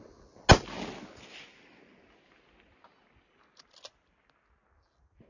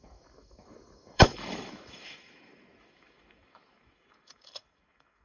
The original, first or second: first